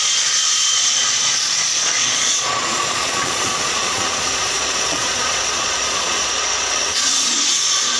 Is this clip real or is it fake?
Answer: fake